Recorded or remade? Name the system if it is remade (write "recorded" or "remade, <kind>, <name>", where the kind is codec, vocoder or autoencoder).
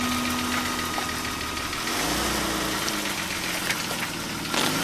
recorded